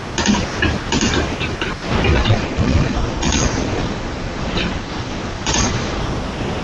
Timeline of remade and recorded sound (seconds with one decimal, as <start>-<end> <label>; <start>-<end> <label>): 0.0-2.1 recorded; 2.1-6.0 remade; 6.0-6.6 recorded